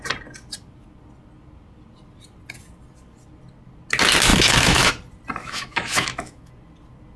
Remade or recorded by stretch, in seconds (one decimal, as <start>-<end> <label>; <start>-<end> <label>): 0.0-4.3 recorded; 4.3-4.9 remade; 4.9-5.4 recorded; 5.4-6.5 remade; 6.5-7.2 recorded